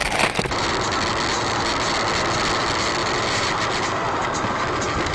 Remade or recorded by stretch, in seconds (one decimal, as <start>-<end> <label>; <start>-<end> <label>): 0.0-0.8 remade; 0.8-3.0 recorded; 3.0-4.6 remade; 4.6-5.1 recorded